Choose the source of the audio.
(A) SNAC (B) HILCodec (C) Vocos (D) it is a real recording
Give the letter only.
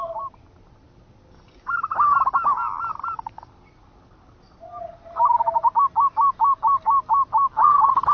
D